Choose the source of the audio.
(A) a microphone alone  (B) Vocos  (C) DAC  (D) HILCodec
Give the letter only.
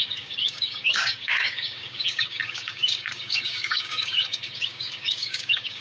C